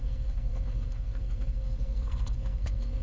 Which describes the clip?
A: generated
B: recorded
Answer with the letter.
A